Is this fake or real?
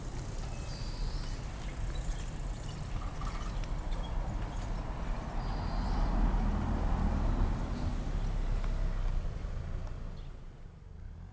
real